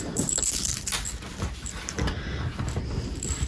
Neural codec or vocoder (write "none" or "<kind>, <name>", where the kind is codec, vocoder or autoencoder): vocoder, BigVGAN v2